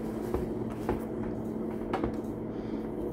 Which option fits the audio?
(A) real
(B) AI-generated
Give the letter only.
A